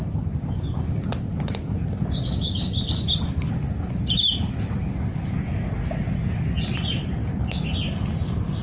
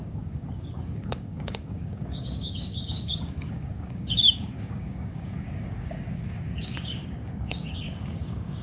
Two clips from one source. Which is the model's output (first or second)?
second